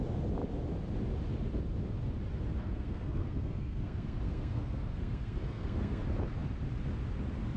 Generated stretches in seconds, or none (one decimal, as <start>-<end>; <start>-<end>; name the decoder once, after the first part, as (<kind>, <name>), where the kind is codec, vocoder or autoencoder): 2.6-6.0 (codec, SNAC)